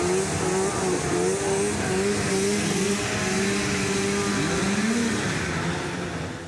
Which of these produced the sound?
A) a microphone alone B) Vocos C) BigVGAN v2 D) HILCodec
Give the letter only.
A